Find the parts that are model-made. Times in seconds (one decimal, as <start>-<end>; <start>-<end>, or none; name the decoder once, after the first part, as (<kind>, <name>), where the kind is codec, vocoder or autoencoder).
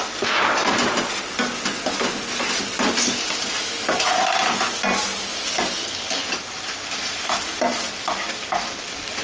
none